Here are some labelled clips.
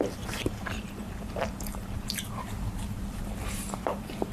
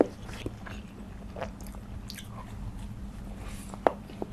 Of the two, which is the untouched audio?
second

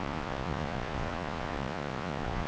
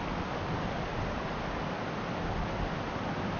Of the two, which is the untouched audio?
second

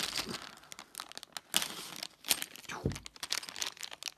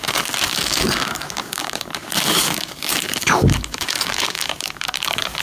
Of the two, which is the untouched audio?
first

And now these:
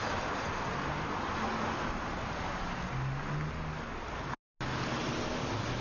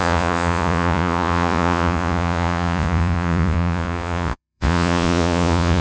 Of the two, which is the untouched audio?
first